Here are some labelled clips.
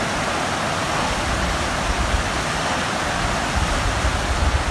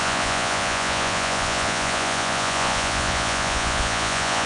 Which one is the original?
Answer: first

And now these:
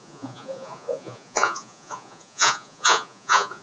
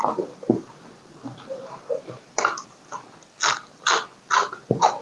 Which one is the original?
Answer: second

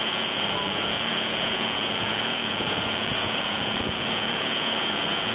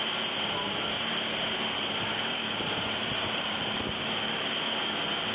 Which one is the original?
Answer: second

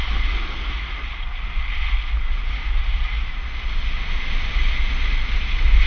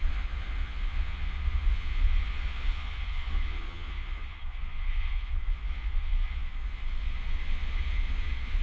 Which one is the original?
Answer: first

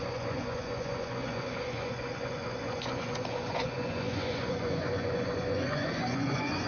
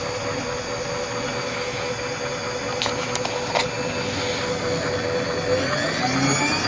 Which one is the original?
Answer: second